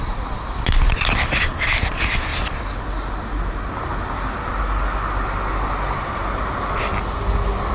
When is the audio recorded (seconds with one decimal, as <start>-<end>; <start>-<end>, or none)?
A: 0.0-7.7